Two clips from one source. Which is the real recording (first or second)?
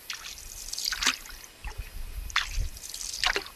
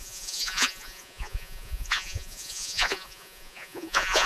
first